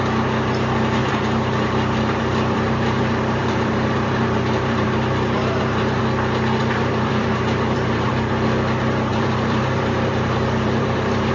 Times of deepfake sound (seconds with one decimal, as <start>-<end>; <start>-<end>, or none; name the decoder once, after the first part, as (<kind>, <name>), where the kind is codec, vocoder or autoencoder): 1.0-6.0 (vocoder, BigVGAN v2); 6.6-8.1; 9.1-11.3